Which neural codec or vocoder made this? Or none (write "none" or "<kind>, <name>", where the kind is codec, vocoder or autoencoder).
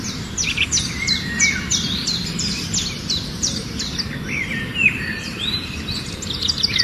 vocoder, BigVGAN v2